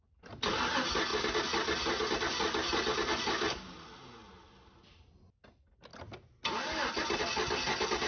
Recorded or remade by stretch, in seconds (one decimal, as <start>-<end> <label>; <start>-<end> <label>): 0.0-8.1 recorded